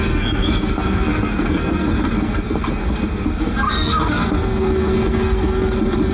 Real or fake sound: fake